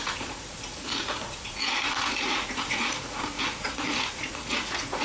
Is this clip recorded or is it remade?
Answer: remade